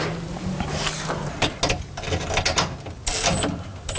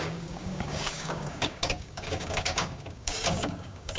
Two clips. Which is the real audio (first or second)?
first